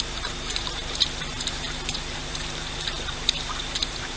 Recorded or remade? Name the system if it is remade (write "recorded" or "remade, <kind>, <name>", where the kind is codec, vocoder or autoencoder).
remade, vocoder, BigVGAN v2